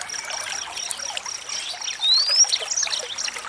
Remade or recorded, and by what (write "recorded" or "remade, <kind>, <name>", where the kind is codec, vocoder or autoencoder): recorded